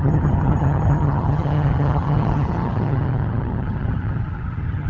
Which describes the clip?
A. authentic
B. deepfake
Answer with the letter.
B